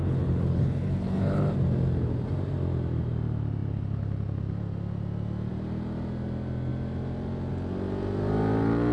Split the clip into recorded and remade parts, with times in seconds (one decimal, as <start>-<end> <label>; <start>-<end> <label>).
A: 0.0-1.5 remade; 1.5-8.9 recorded